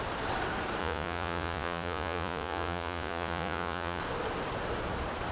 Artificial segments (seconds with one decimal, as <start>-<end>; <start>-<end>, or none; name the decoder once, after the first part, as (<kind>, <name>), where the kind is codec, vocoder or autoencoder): 0.8-4.0 (vocoder, Vocos)